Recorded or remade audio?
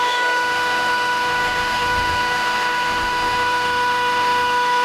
remade